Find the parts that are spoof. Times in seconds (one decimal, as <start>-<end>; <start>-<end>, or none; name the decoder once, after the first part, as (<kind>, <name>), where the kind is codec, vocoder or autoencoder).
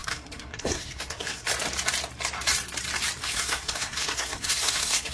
0.0-1.5 (codec, SNAC); 3.2-5.1